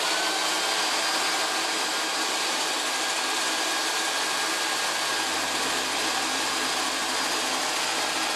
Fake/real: real